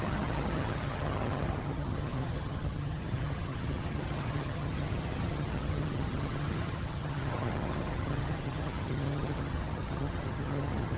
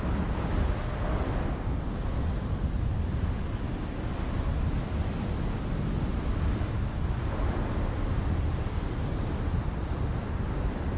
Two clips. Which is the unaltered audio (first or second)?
second